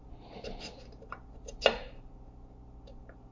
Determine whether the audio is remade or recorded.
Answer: recorded